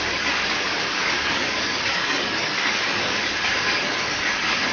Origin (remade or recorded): remade